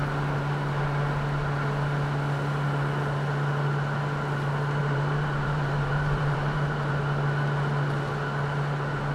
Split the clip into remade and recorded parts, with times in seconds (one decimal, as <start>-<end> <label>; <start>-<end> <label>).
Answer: 0.0-4.8 recorded; 4.8-6.9 remade; 6.9-9.1 recorded